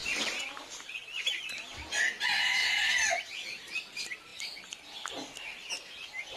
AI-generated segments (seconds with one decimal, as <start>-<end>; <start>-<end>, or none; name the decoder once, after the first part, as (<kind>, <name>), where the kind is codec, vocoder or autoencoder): 1.7-2.2 (vocoder, BigVGAN v2); 4.3-5.1